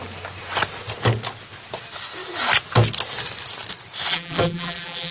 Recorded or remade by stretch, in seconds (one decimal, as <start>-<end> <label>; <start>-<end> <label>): 0.0-4.1 recorded; 4.1-5.1 remade